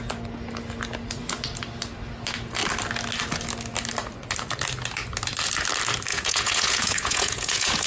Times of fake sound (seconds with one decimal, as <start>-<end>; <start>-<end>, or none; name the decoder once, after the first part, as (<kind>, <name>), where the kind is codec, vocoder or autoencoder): 6.1-7.9 (vocoder, Vocos)